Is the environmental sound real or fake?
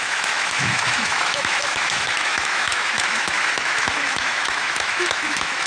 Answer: fake